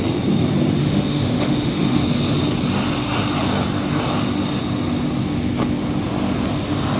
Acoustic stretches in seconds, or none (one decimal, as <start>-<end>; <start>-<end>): 0.0-0.8; 2.0-7.0